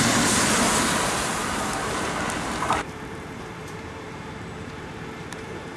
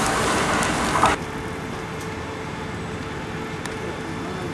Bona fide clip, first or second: second